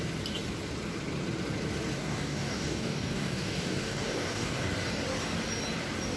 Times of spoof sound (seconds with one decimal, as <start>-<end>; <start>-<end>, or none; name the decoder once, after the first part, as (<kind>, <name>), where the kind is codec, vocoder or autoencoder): 2.0-4.7 (codec, DAC)